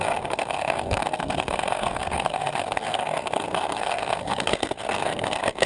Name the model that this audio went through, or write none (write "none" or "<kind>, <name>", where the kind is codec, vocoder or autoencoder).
codec, SNAC